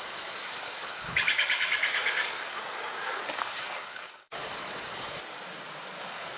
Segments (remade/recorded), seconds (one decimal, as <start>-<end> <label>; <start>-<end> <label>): 0.0-5.2 remade; 5.2-6.0 recorded; 6.0-6.4 remade